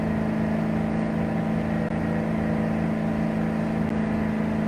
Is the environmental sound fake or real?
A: real